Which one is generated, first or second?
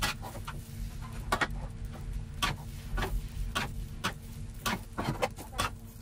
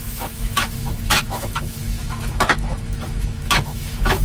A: second